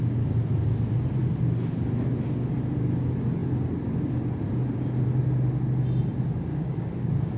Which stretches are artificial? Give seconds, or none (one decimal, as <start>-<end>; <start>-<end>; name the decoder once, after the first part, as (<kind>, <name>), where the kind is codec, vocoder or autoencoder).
6.5-7.4 (codec, DAC)